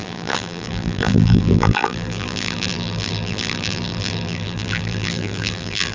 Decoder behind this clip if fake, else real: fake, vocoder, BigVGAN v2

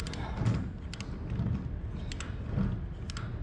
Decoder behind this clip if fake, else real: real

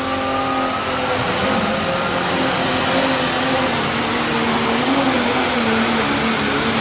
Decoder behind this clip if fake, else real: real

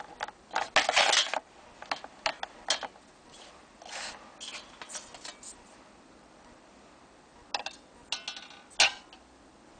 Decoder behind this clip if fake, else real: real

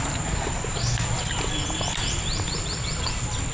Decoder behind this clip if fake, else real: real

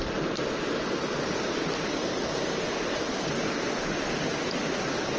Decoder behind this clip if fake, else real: fake, vocoder, BigVGAN v2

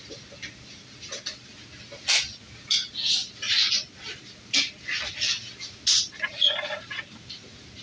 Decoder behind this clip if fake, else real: real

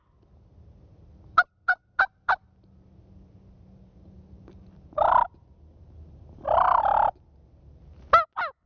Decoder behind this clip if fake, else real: real